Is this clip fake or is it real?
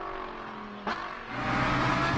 real